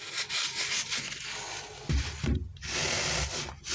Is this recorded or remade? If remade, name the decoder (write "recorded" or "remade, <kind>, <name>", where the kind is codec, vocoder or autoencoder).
recorded